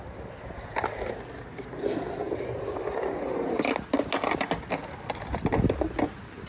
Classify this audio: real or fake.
real